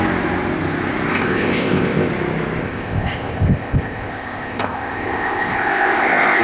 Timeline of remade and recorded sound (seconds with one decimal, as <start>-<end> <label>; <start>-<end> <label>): 0.0-1.1 recorded; 1.1-2.1 remade; 2.1-2.6 recorded; 2.6-6.4 remade